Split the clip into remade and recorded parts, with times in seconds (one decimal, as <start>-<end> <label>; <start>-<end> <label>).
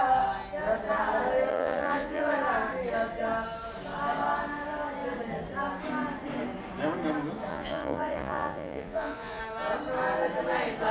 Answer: 0.0-1.5 recorded; 1.5-2.2 remade; 2.2-7.5 recorded; 7.5-9.4 remade; 9.4-10.9 recorded